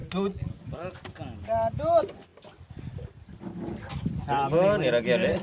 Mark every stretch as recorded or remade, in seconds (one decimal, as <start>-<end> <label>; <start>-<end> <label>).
0.0-5.4 recorded